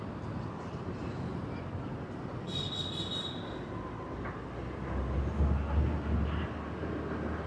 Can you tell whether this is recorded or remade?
recorded